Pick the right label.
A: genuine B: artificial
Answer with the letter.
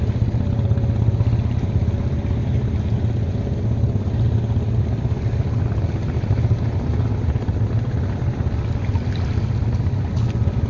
A